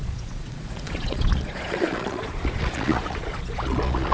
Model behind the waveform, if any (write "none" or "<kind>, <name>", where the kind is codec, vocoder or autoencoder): vocoder, Vocos